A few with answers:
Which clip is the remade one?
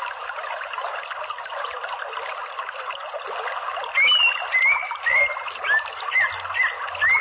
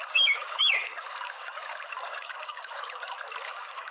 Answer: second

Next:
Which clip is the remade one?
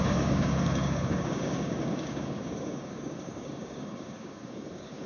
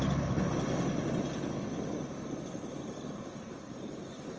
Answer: first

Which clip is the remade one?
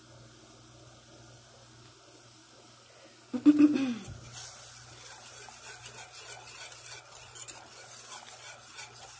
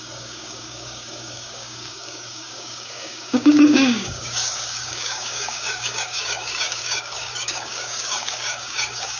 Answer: second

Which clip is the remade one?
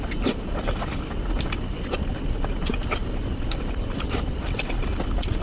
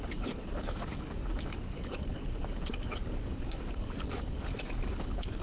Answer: second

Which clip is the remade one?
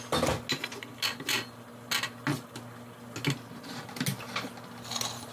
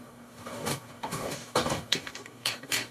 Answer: second